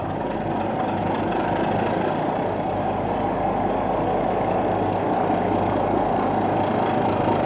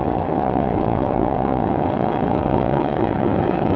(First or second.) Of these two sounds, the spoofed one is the second